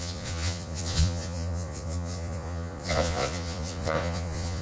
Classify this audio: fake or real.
fake